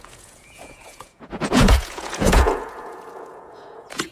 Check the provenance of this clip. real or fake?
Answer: fake